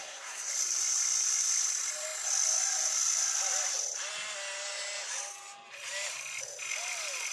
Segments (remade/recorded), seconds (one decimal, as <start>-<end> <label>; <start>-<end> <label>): 0.0-0.5 remade; 0.5-7.3 recorded